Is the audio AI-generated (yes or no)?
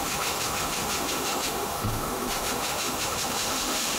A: yes